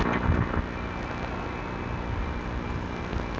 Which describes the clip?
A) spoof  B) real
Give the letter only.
B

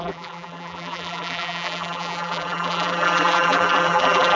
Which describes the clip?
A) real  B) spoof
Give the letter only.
B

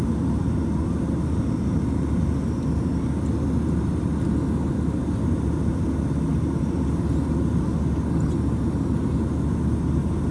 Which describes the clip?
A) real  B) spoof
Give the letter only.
A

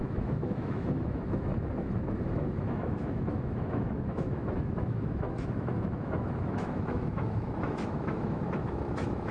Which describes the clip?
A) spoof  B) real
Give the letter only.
A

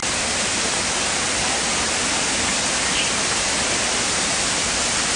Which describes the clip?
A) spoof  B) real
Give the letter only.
B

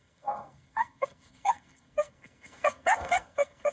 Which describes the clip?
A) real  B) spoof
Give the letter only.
B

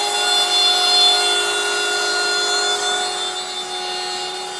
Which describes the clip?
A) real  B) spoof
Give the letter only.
A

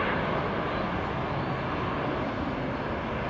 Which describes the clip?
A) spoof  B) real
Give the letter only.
B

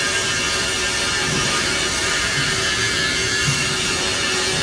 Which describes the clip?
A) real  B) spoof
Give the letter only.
B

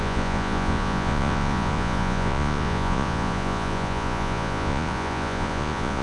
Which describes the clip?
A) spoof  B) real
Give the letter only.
A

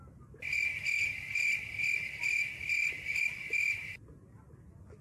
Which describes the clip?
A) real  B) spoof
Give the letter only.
A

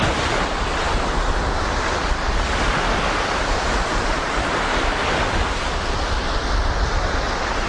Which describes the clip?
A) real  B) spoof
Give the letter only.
A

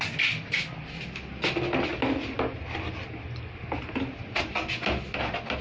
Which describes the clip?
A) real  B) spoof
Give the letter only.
A